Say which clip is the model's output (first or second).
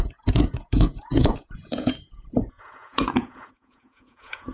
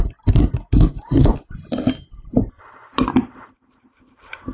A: first